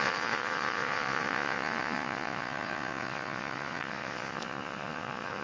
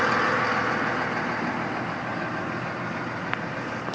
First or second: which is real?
second